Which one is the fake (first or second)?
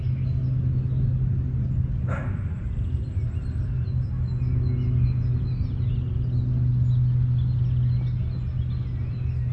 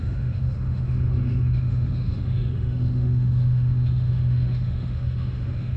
second